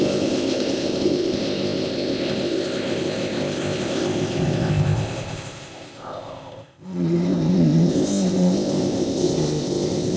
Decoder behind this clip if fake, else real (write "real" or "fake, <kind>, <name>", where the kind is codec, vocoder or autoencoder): fake, codec, ZipCodec